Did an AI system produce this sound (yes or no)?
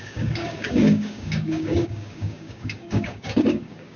yes